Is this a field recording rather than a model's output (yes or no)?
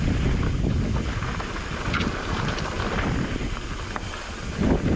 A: yes